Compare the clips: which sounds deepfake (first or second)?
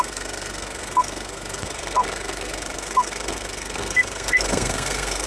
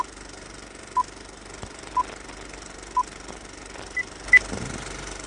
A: first